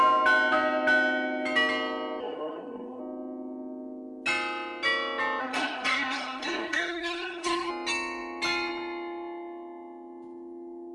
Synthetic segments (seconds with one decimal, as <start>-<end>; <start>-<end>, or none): 2.2-3.0; 5.4-7.7